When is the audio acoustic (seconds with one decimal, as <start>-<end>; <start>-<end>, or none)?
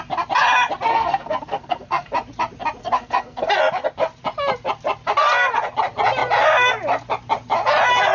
0.0-0.9; 2.1-2.8; 3.5-8.1